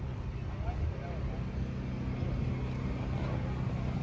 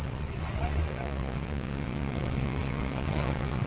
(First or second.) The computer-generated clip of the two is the second